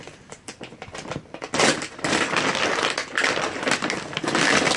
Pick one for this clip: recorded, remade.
recorded